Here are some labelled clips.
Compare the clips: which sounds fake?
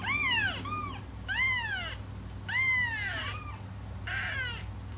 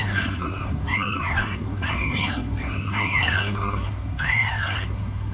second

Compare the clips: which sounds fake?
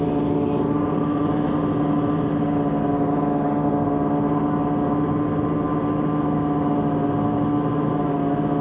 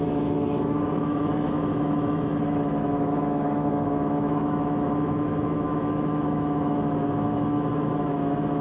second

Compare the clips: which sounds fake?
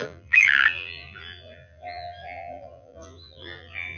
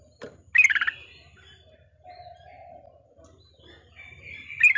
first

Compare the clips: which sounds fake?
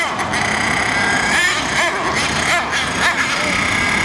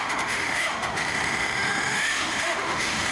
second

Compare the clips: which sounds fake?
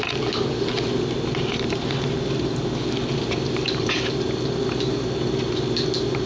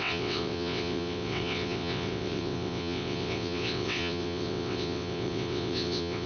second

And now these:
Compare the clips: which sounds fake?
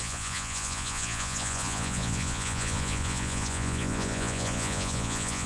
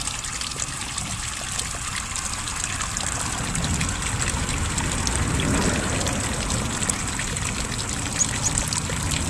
first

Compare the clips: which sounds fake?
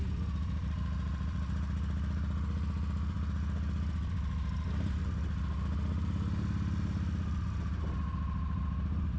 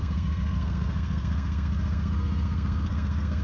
second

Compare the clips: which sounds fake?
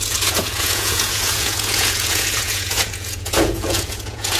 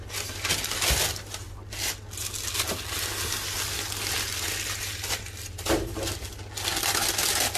first